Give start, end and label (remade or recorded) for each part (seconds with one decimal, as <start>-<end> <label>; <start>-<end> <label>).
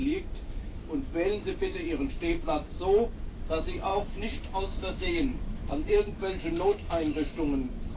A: 0.0-3.4 remade; 3.4-3.9 recorded; 3.9-8.0 remade